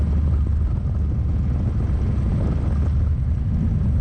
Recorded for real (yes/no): yes